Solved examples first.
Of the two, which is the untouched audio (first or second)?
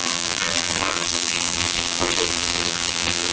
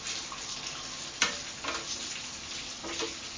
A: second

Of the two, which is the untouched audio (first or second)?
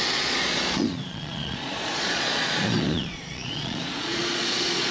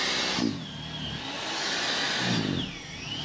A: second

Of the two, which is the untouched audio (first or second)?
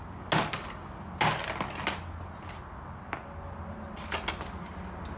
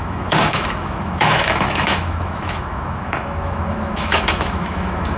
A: first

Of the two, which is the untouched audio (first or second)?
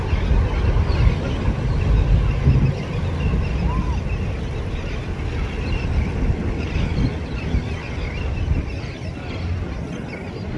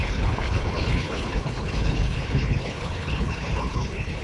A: first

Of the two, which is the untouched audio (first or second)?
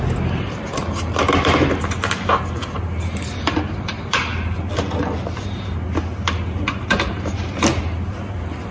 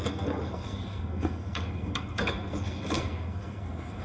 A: first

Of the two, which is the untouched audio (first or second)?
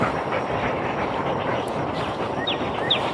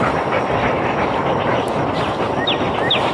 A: second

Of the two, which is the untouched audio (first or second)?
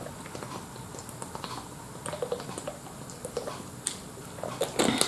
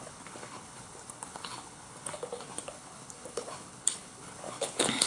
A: first